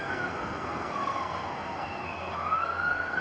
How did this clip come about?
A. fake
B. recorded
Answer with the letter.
A